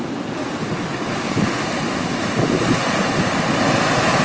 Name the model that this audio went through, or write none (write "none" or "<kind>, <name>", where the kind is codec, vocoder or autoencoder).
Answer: none